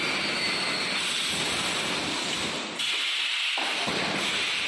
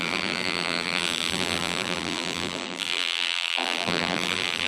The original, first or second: first